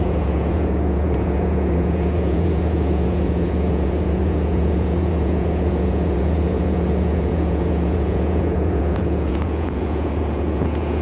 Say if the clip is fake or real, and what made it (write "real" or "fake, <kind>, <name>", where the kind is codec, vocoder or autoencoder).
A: fake, vocoder, Vocos